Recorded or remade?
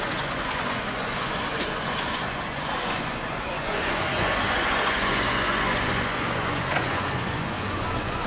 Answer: remade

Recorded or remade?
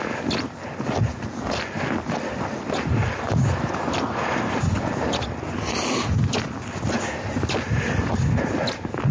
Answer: recorded